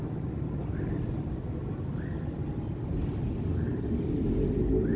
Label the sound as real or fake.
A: real